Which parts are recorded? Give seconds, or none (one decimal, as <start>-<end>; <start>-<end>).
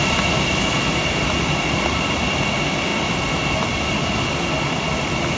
0.0-5.4